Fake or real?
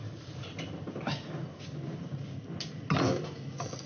real